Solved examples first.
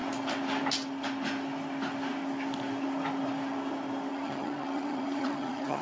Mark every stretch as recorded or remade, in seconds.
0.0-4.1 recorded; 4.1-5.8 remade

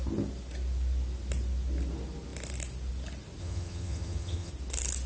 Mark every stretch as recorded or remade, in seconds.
0.0-3.4 recorded; 3.4-4.5 remade; 4.5-5.1 recorded

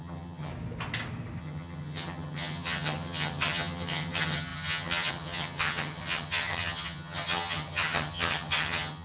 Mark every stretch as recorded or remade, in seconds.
0.0-0.5 remade; 0.5-1.4 recorded; 1.4-9.0 remade

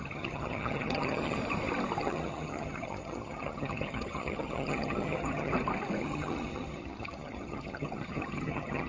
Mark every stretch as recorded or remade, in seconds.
0.0-1.4 remade; 1.4-2.0 recorded; 2.0-5.5 remade; 5.5-6.0 recorded; 6.0-8.9 remade

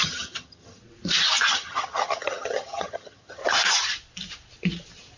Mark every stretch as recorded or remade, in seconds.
0.0-0.8 remade; 0.8-1.5 recorded; 1.5-3.4 remade; 3.4-5.2 recorded

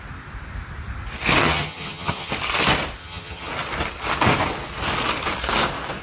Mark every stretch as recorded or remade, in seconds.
0.0-1.4 recorded; 1.4-2.3 remade; 2.3-3.0 recorded; 3.0-3.5 remade; 3.5-6.0 recorded